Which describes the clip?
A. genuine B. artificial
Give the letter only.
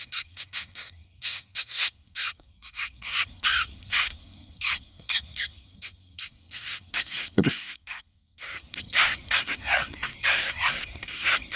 B